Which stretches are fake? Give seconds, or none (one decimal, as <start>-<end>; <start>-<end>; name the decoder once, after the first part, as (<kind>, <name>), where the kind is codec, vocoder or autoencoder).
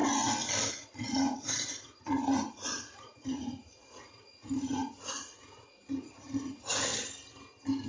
0.7-6.9 (vocoder, Vocos)